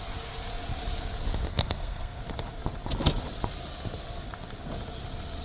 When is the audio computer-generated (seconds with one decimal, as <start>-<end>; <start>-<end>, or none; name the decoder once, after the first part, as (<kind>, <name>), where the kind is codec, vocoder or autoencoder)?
1.5-2.2 (codec, SNAC)